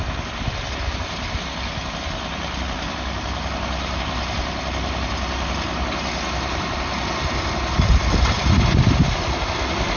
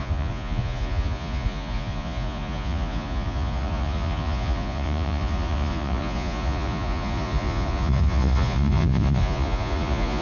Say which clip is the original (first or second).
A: first